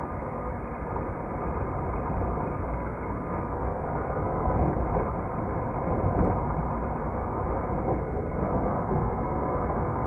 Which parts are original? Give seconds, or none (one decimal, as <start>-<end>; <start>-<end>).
0.5-2.5; 4.6-7.0; 7.4-8.0